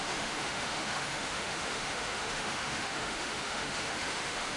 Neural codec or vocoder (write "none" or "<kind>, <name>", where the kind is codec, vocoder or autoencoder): autoencoder, DAC-VAE